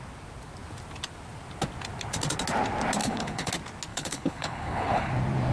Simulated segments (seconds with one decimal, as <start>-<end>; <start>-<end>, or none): 3.0-3.5; 3.9-5.1